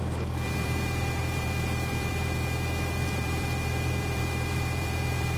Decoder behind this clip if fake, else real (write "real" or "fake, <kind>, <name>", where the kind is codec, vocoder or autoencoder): fake, vocoder, BigVGAN v2